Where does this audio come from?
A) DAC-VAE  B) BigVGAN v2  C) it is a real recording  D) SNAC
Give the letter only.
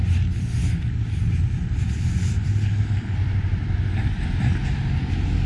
C